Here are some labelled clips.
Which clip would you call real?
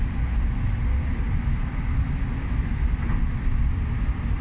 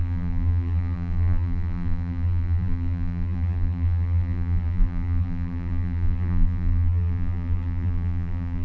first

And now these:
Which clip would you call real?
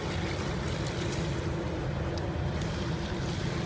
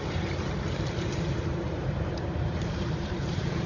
first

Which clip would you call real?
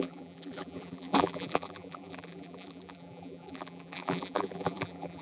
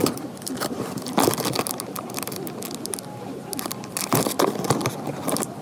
second